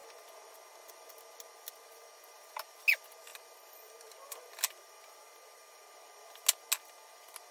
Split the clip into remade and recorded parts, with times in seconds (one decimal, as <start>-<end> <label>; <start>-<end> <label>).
0.0-7.5 recorded